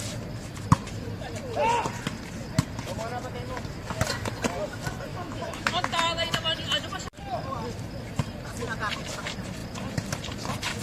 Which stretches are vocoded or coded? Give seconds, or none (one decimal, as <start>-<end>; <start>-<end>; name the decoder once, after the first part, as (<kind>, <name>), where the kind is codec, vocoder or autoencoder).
5.1-5.8 (autoencoder, DAC-VAE)